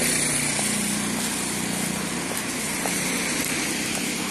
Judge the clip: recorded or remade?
recorded